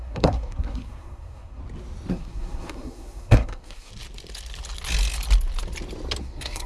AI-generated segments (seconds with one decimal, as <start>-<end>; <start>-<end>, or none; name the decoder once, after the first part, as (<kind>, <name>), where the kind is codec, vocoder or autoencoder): 0.0-1.6 (codec, SNAC); 2.1-3.9; 6.2-6.7